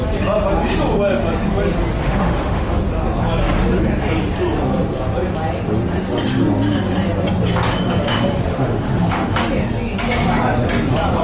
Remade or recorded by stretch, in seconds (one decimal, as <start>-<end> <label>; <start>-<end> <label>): 0.0-2.0 recorded; 2.0-2.8 remade; 2.8-8.5 recorded; 8.5-9.5 remade; 9.5-11.2 recorded